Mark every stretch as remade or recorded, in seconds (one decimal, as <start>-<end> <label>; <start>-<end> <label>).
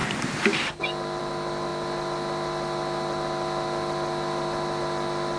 0.0-5.4 recorded